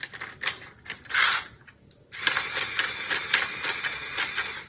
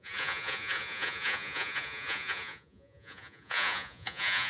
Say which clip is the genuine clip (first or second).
first